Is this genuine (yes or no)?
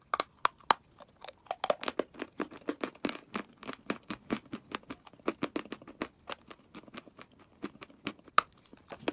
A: yes